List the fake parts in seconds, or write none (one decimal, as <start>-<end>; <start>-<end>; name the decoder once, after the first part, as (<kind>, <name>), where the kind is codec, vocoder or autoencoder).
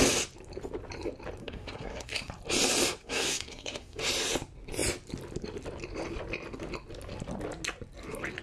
1.4-2.3 (codec, SNAC); 3.0-4.0